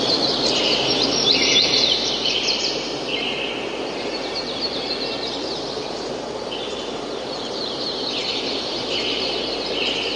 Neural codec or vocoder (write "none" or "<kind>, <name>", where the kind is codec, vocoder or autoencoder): vocoder, BigVGAN v2